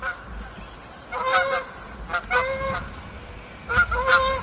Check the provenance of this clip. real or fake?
real